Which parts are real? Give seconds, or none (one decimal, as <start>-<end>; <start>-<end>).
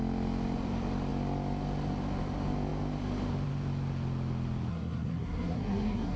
0.0-4.7